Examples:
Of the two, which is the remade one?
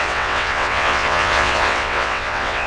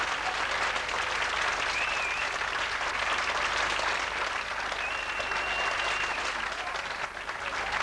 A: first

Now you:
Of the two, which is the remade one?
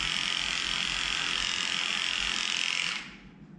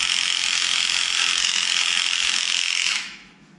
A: second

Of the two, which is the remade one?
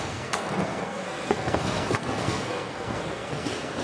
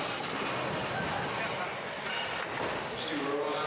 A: first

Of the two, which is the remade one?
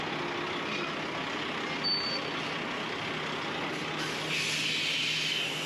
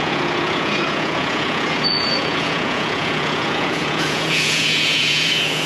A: second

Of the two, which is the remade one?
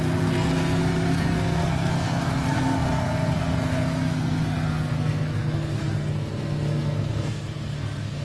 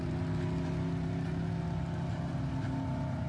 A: first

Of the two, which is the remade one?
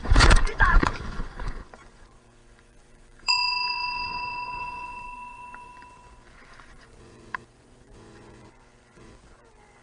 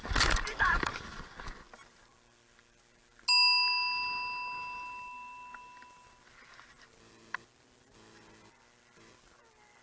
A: first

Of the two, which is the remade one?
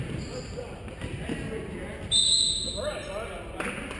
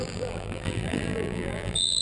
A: second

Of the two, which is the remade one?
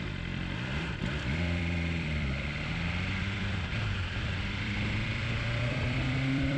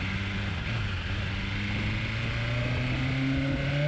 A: first